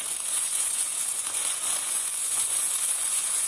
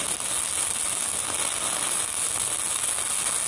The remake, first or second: first